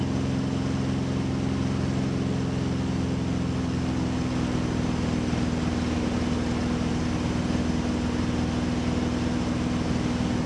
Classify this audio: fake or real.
real